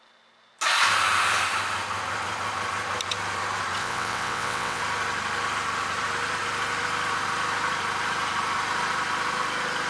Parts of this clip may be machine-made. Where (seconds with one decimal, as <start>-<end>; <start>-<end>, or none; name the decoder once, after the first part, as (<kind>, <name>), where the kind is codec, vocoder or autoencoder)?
3.8-4.8 (vocoder, WaveNeXt)